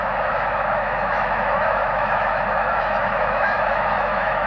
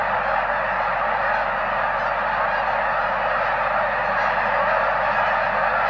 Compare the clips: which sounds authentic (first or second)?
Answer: second